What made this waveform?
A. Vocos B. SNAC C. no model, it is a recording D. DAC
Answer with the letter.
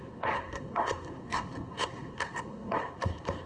B